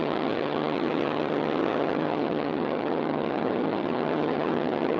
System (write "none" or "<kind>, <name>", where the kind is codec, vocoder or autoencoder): vocoder, HiFi-GAN